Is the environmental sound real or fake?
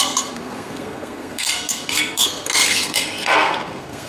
fake